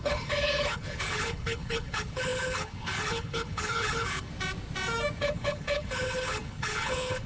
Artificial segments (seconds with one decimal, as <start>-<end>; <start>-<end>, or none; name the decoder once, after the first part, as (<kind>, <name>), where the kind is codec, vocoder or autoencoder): 0.0-4.3 (codec, HILCodec); 5.2-7.3